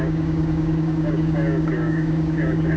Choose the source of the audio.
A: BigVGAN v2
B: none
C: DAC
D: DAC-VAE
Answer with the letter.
C